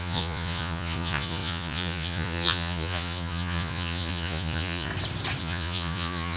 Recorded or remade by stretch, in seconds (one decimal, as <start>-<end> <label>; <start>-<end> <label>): 0.0-4.9 remade; 4.9-5.4 recorded; 5.4-6.4 remade